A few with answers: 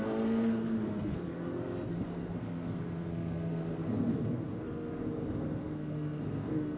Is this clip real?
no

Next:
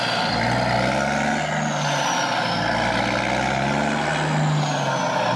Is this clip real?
yes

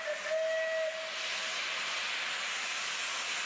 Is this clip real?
yes